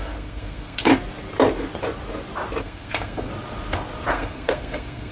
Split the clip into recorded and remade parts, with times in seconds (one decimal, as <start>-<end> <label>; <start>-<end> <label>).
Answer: 0.0-0.9 remade; 0.9-2.6 recorded; 2.6-3.3 remade; 3.3-4.1 recorded; 4.1-5.1 remade